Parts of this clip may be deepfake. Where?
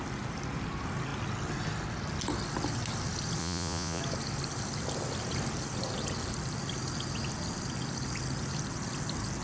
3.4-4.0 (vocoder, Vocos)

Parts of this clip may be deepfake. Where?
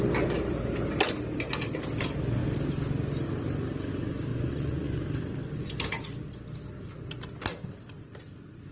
4.3-5.0 (vocoder, Vocos)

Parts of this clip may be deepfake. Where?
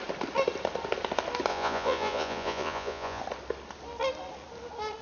1.5-3.2 (vocoder, Vocos)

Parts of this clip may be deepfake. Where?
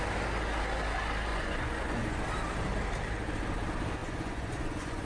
1.3-2.2 (vocoder, Vocos); 4.0-5.1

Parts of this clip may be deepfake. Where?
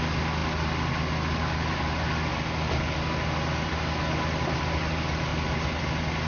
none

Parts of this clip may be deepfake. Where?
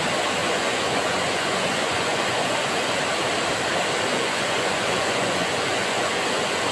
0.4-3.0 (vocoder, Vocos); 4.1-6.7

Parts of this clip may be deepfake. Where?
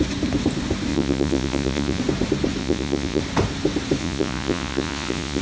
0.9-2.0 (vocoder, Vocos); 2.6-3.2; 4.0-5.4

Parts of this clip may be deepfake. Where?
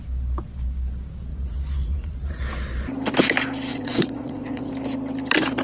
1.3-2.4 (vocoder, Vocos); 3.7-4.7